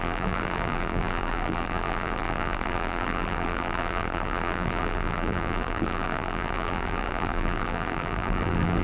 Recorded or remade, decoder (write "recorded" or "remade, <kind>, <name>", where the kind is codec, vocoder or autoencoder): remade, vocoder, BigVGAN v2